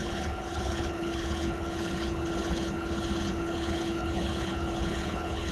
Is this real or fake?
fake